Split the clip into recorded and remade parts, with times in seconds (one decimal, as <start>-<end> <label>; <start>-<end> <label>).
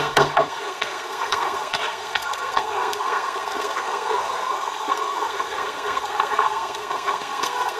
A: 0.0-7.8 remade